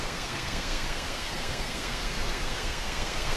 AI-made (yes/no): yes